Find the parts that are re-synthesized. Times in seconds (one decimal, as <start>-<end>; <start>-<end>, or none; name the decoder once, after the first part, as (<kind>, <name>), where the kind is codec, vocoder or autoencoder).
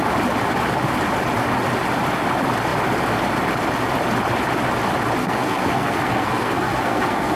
5.2-7.4 (codec, SNAC)